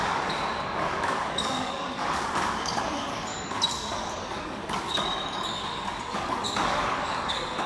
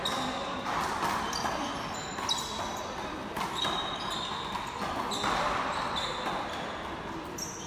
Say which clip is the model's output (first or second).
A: first